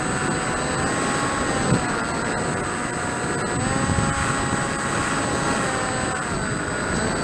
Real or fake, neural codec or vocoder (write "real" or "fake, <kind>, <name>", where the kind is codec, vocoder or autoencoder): real